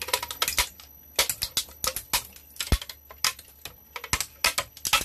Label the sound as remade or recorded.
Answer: recorded